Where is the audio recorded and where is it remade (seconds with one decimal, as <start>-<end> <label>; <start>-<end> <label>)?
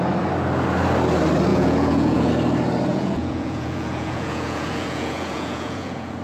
0.0-1.5 recorded; 1.5-2.3 remade; 2.3-2.9 recorded; 2.9-6.2 remade